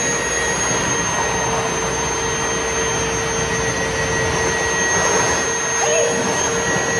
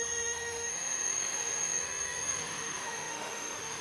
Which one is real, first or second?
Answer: first